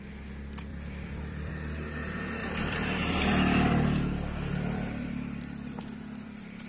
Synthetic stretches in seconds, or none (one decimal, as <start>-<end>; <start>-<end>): 0.7-1.5; 2.4-6.7